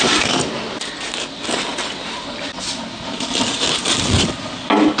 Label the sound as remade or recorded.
recorded